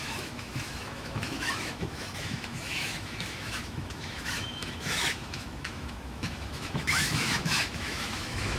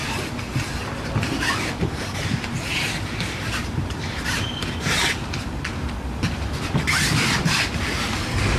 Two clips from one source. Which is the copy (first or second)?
first